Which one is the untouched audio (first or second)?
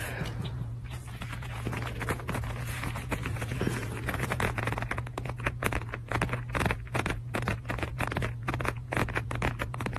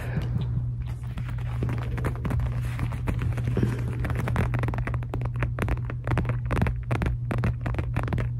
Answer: second